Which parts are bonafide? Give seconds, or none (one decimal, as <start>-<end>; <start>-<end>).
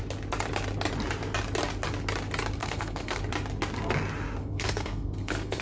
0.0-2.6; 3.2-4.4